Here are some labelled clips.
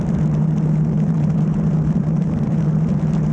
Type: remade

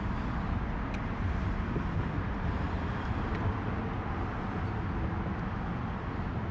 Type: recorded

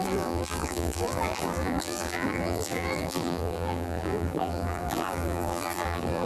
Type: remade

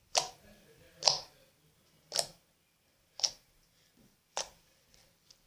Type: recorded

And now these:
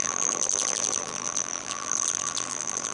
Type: remade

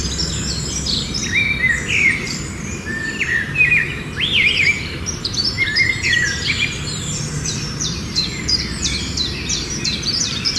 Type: remade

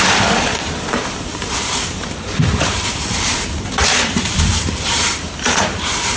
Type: remade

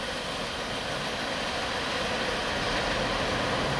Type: recorded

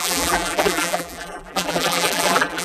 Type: remade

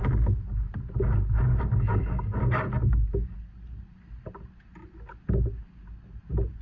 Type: recorded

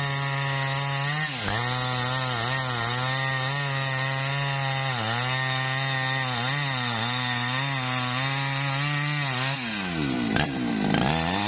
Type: recorded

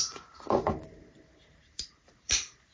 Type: remade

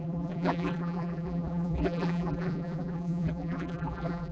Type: remade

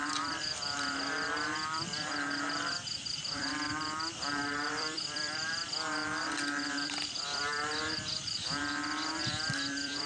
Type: remade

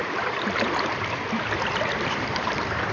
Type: remade